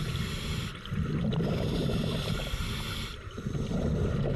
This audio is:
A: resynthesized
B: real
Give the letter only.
B